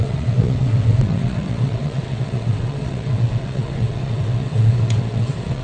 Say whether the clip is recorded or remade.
remade